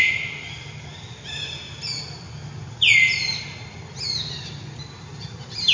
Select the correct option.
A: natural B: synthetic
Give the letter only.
A